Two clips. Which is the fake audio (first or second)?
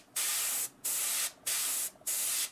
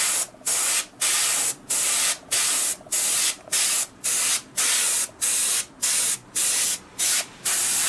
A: second